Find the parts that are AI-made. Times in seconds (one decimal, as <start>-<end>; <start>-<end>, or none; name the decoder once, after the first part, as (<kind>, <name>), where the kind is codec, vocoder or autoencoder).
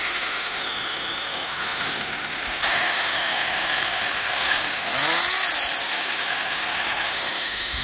0.0-4.9 (autoencoder, DAC-VAE); 5.8-7.8